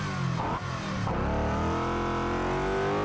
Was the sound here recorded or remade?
recorded